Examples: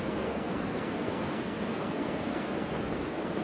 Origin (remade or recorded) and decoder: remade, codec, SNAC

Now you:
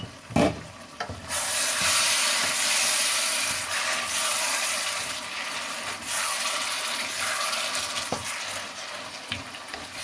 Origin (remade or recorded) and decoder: recorded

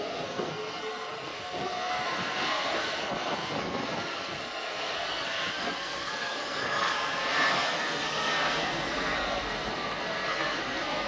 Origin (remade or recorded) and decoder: remade, codec, SNAC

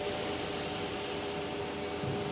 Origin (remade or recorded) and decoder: recorded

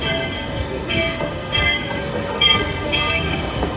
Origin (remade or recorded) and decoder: remade, codec, SNAC